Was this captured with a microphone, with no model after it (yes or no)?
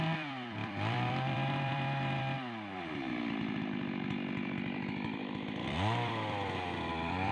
no